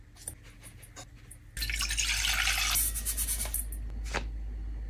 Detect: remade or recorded recorded